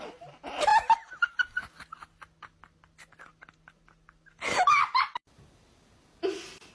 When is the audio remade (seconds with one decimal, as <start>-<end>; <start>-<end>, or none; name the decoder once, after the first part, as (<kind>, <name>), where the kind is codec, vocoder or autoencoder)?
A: none